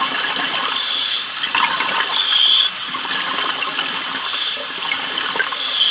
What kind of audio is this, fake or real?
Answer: real